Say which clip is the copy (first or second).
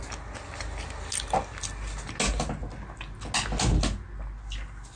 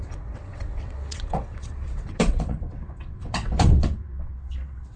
second